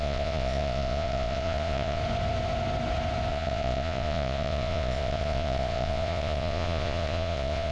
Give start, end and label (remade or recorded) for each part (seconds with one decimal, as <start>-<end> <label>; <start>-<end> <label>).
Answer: 0.0-2.0 remade; 2.0-3.3 recorded; 3.3-7.7 remade